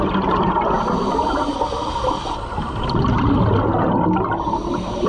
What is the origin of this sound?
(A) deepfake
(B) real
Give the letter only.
B